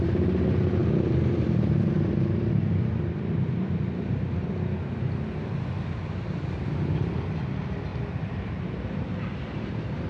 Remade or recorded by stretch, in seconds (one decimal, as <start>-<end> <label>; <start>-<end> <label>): 0.0-0.8 recorded; 0.8-2.6 remade; 2.6-7.9 recorded; 7.9-9.7 remade; 9.7-10.1 recorded